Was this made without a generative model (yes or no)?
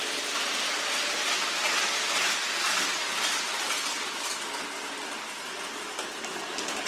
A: no